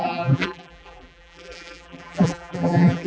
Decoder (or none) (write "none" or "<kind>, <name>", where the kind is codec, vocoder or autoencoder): vocoder, BigVGAN v2